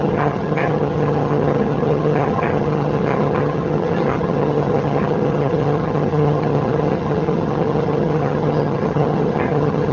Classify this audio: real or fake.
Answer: fake